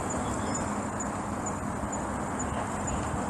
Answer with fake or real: real